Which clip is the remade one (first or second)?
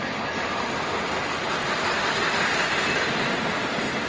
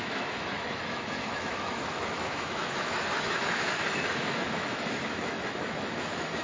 second